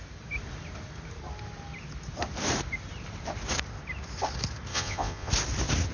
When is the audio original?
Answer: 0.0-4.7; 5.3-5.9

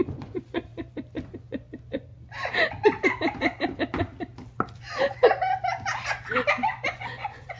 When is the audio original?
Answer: 0.7-1.3; 2.1-6.5

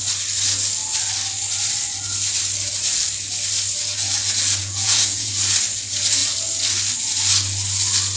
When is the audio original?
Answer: 0.0-4.6; 5.3-8.2

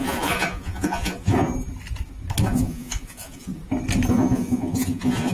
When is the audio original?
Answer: 1.5-2.4; 3.5-4.1